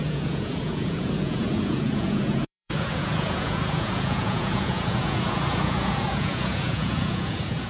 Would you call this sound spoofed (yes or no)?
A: yes